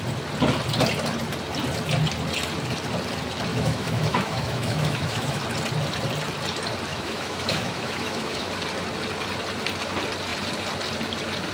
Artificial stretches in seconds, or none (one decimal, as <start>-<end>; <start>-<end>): 3.5-5.4; 6.9-8.5